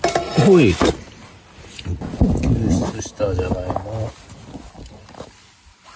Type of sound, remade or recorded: recorded